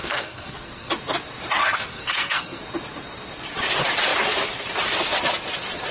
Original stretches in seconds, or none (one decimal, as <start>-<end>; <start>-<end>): 0.9-1.6; 2.6-5.9